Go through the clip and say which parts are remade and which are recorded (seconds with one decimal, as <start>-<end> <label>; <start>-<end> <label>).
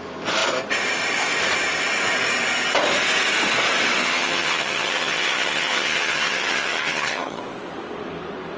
0.0-4.0 recorded; 4.0-7.4 remade; 7.4-8.6 recorded